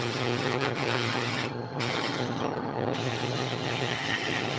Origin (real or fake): fake